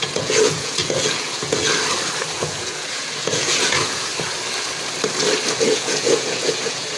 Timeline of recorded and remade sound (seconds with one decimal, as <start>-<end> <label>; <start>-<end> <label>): 0.0-1.6 remade; 1.6-2.4 recorded; 2.4-4.1 remade; 4.1-5.6 recorded; 5.6-7.0 remade